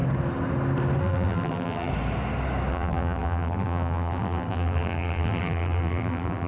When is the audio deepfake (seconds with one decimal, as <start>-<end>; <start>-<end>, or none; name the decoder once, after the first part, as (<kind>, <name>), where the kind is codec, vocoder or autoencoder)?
1.0-1.9 (vocoder, BigVGAN v2); 2.7-6.5